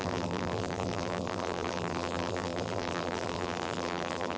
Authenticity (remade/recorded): remade